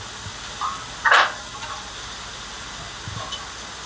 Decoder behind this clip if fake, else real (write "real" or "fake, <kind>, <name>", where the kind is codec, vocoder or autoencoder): real